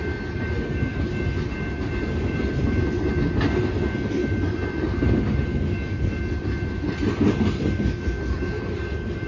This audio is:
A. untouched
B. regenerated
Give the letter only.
A